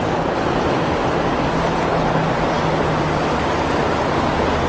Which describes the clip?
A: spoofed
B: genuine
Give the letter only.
B